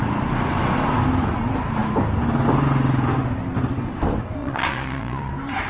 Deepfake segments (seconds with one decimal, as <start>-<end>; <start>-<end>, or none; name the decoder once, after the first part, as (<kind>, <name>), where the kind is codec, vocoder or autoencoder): 4.4-5.3 (vocoder, Vocos)